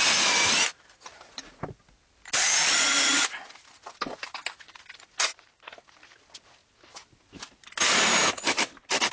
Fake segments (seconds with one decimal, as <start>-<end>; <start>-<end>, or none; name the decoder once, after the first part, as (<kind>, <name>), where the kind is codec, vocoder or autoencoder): none